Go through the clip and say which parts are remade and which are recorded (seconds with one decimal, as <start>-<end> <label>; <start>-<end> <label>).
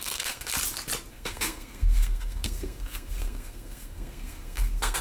0.0-0.5 remade; 0.5-1.1 recorded; 1.1-5.0 remade